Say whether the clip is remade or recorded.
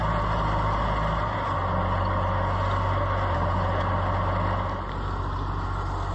recorded